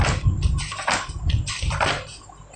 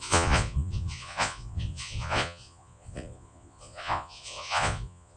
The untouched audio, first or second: first